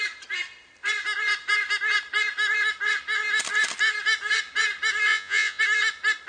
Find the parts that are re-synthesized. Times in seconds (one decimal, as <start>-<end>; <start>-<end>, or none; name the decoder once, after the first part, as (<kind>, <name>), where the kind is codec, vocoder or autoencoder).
5.1-5.6 (vocoder, Vocos)